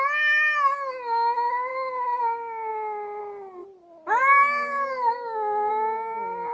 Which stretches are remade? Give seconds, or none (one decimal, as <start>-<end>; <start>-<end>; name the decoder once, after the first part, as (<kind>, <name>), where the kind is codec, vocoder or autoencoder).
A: none